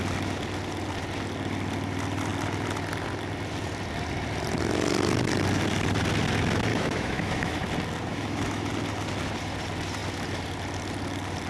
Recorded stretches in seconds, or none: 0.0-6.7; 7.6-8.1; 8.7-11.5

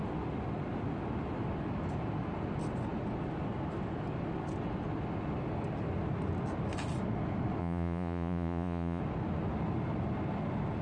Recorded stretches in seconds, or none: 0.0-7.6; 9.0-10.8